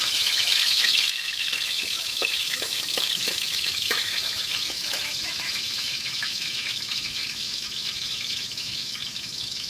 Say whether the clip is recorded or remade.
remade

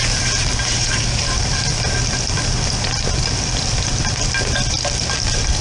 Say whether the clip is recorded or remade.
recorded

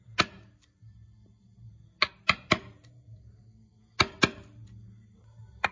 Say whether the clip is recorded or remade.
recorded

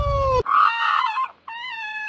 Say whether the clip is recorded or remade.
recorded